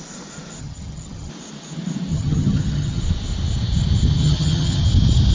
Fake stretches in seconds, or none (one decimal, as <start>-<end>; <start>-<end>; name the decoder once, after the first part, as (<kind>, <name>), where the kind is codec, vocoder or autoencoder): 0.6-1.3 (vocoder, HiFi-GAN); 2.1-3.0; 4.2-4.8

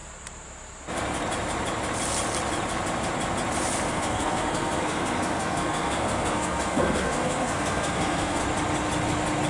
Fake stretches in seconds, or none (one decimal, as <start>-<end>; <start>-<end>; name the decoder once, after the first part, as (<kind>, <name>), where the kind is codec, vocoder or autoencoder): 3.9-8.4 (codec, SNAC)

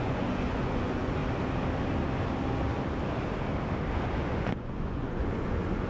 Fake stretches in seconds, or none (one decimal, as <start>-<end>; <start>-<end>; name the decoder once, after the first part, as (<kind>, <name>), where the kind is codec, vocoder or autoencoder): 0.0-1.2 (vocoder, Vocos); 3.9-5.9

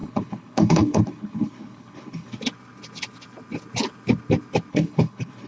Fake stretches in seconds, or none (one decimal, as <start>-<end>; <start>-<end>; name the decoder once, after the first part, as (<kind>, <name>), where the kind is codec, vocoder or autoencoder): 0.0-2.4 (codec, HILCodec); 4.7-5.5

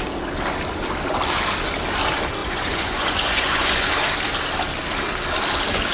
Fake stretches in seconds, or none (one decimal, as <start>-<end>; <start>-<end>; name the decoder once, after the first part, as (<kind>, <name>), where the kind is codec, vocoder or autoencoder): 2.4-3.9 (vocoder, Vocos)

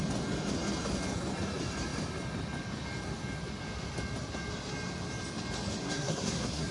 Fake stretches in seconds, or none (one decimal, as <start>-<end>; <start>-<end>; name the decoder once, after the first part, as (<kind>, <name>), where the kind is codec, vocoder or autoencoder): 5.8-6.7 (codec, SNAC)

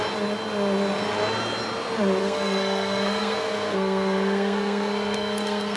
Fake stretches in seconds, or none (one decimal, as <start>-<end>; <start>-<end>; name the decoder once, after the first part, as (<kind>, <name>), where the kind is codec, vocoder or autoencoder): 2.2-5.8 (codec, SNAC)

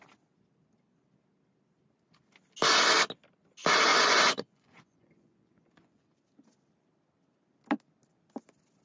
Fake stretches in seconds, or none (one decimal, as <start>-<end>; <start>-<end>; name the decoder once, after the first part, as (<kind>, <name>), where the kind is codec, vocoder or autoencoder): 3.9-6.1 (vocoder, Vocos)